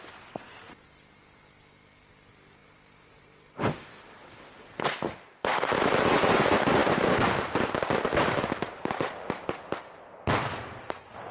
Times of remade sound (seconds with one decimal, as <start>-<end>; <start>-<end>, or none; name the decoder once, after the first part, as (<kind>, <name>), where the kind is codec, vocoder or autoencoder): 2.6-4.5 (vocoder, BigVGAN v2); 6.8-10.8